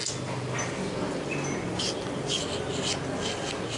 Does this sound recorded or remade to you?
recorded